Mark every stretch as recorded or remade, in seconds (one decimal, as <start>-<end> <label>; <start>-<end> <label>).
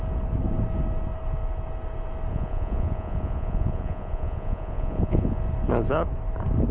0.0-2.3 recorded; 2.3-5.4 remade; 5.4-6.7 recorded